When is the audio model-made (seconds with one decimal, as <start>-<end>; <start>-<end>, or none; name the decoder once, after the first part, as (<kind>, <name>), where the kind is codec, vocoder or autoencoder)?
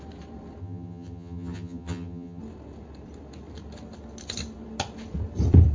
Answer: 0.6-2.4 (vocoder, HiFi-GAN)